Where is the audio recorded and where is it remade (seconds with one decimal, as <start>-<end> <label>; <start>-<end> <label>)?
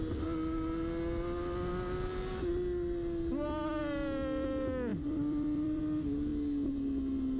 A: 0.0-4.9 recorded; 4.9-5.8 remade; 5.8-7.4 recorded